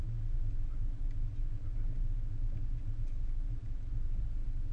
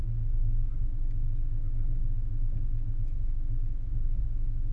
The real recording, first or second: second